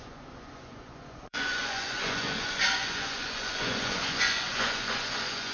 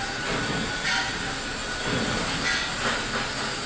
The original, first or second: second